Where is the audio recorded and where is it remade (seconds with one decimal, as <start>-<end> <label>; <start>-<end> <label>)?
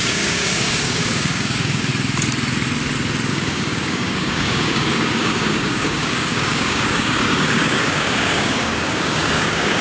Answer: 0.0-1.9 remade; 1.9-3.3 recorded; 3.3-9.8 remade